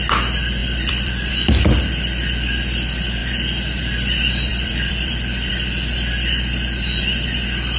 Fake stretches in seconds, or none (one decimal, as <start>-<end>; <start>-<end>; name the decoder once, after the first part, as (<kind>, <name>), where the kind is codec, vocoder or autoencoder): 0.6-1.3 (vocoder, BigVGAN v2); 4.5-5.5